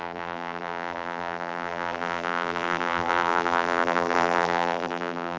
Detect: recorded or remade remade